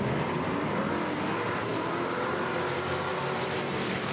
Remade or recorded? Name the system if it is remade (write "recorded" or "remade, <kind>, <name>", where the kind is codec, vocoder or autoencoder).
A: recorded